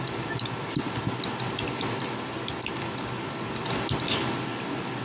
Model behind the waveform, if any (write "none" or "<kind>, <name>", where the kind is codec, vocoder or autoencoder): none